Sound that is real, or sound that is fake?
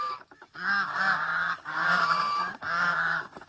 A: fake